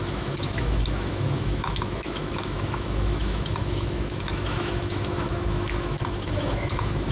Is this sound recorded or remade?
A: remade